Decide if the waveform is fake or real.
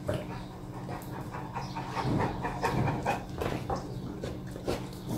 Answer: real